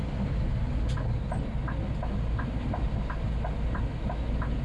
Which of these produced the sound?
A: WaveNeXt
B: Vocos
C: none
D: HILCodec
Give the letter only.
C